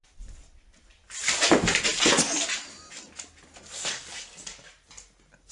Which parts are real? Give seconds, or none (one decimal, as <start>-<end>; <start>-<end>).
0.0-3.8; 4.7-5.5